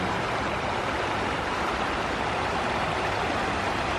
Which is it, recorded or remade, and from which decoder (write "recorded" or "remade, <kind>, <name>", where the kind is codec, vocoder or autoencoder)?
recorded